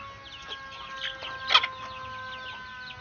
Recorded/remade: recorded